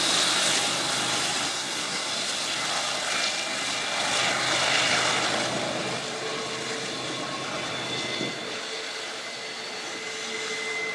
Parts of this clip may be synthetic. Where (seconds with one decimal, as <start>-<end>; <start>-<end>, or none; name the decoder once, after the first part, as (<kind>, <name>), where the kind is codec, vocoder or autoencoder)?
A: 1.5-2.1 (codec, SNAC)